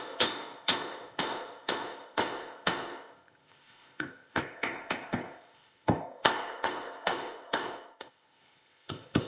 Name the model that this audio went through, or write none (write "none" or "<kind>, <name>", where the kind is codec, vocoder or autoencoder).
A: codec, ZipCodec